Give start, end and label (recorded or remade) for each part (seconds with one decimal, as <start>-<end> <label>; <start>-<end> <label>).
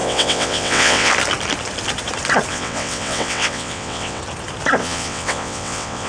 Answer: 0.0-1.1 remade; 1.1-2.5 recorded; 2.5-4.2 remade; 4.2-4.8 recorded; 4.8-6.1 remade